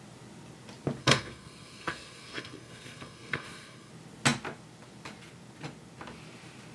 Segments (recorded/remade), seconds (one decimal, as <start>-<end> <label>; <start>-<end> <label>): 0.0-1.0 recorded; 1.0-3.9 remade; 3.9-6.7 recorded